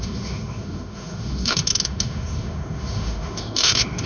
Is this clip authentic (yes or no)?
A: no